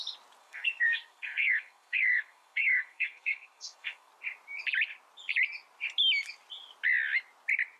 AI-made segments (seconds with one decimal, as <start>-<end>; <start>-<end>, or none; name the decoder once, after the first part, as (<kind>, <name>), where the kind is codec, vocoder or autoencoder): 0.4-4.1 (codec, SNAC)